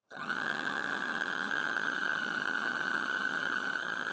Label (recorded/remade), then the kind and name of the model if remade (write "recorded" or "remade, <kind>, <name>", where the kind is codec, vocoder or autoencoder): remade, vocoder, HiFi-GAN